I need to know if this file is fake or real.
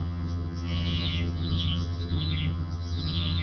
fake